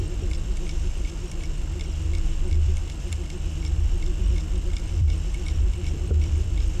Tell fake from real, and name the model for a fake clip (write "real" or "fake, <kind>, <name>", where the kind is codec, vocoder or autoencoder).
fake, vocoder, BigVGAN v2